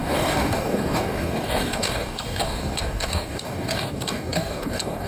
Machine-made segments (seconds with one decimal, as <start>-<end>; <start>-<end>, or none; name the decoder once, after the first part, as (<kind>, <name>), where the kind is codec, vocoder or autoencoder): 0.0-5.1 (codec, DAC)

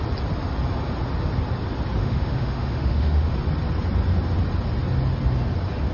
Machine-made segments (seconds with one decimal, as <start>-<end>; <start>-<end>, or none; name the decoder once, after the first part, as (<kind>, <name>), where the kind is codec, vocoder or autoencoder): 2.0-3.3 (autoencoder, DAC-VAE)

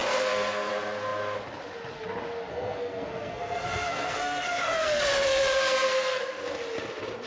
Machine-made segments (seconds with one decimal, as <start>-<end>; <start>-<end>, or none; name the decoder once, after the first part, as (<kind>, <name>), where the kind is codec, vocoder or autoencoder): 0.0-0.7 (codec, SNAC); 2.5-6.2

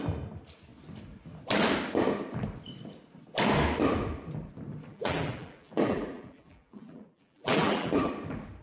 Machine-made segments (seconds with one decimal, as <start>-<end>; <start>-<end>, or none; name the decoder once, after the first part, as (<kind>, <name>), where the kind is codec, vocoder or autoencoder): 4.9-8.1 (vocoder, BigVGAN v2)

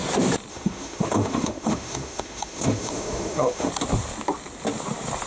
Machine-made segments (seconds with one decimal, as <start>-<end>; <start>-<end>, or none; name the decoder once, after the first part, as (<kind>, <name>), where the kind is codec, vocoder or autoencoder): 0.5-3.7 (autoencoder, DAC-VAE)

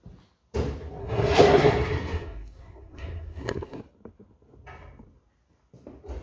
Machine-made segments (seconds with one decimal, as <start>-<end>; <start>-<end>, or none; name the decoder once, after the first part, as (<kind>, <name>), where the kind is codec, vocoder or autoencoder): 1.0-3.8 (codec, SNAC)

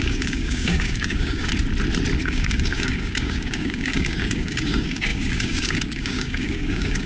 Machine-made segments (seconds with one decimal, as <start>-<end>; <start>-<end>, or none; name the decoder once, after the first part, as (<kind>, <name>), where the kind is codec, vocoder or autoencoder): 0.0-1.5 (codec, DAC); 2.2-7.1

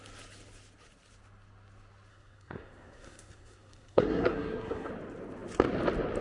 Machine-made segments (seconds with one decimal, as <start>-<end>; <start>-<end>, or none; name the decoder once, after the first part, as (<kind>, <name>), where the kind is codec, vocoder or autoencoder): 2.1-4.9 (codec, SNAC)